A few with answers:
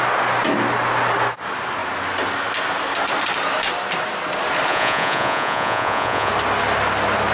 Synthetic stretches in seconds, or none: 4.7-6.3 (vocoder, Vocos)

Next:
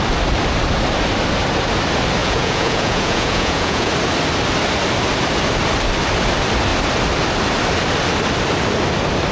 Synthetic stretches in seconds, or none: 2.2-3.9 (vocoder, Vocos)

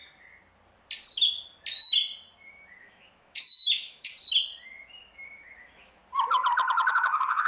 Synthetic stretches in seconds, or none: 2.8-4.1 (autoencoder, DAC-VAE); 4.9-6.0; 6.9-7.5

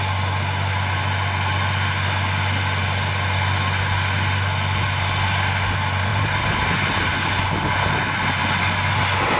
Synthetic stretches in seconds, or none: 6.1-7.1 (vocoder, BigVGAN v2)

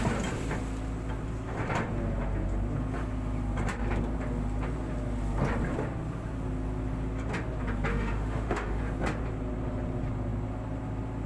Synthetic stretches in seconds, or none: 7.9-8.8 (autoencoder, DAC-VAE)

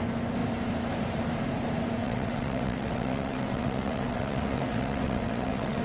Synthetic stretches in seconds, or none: 2.0-5.8 (vocoder, WaveNeXt)

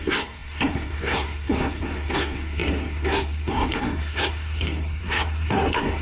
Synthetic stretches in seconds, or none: 0.0-6.0 (codec, SNAC)

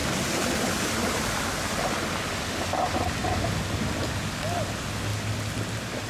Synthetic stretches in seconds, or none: 5.1-6.1 (vocoder, BigVGAN v2)